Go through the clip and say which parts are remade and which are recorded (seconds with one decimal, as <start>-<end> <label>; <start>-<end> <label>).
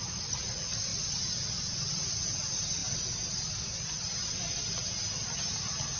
0.0-6.0 recorded